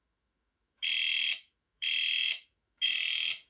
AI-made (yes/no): yes